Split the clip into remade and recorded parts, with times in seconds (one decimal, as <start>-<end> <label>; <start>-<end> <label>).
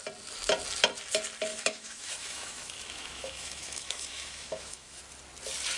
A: 0.0-1.5 recorded; 1.5-5.0 remade; 5.0-5.8 recorded